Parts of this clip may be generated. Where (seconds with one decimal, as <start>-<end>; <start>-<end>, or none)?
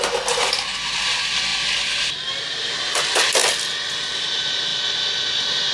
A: none